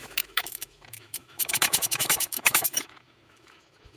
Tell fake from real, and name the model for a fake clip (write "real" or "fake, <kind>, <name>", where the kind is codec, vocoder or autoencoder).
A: fake, autoencoder, DAC-VAE